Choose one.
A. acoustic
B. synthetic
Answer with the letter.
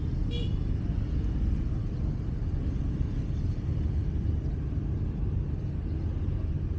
A